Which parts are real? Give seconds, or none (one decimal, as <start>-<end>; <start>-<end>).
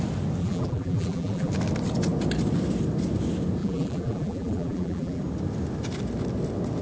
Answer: 0.0-0.4; 1.5-3.6; 5.2-6.8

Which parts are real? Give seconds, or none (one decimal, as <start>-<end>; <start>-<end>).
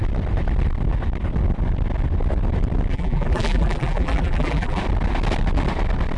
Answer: 0.0-2.9; 4.8-6.2